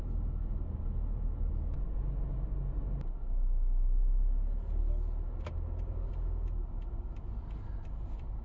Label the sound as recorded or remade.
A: recorded